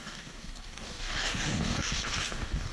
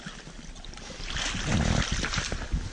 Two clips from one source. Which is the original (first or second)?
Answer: second